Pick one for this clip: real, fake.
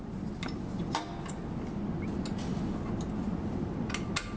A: real